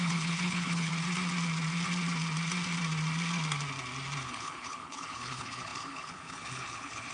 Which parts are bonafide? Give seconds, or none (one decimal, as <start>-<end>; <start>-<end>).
0.9-4.2